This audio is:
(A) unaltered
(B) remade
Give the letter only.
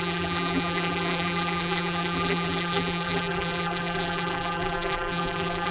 B